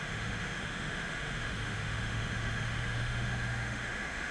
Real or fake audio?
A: fake